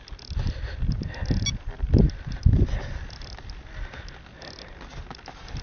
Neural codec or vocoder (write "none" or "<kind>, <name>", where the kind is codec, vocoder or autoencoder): none